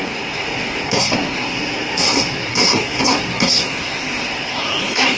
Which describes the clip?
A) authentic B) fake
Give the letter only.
B